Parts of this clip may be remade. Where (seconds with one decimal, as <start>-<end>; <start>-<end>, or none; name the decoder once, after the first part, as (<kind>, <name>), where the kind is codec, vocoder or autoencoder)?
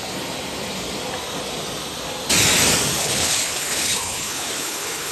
3.0-5.1 (codec, HILCodec)